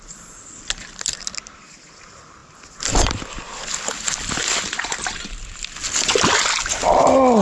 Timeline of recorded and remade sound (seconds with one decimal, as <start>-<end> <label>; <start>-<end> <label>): 0.0-7.4 recorded